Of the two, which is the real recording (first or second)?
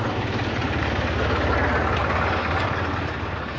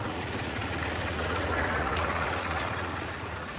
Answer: first